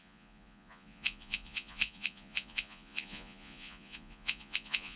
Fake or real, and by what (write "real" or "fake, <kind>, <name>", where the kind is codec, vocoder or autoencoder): fake, vocoder, Vocos